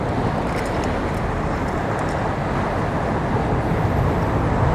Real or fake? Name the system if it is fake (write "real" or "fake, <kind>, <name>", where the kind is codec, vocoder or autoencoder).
real